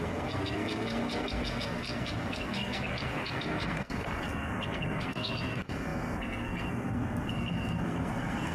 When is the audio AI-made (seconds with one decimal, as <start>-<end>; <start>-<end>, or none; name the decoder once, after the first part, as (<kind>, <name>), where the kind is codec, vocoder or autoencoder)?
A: 0.0-8.5 (codec, SNAC)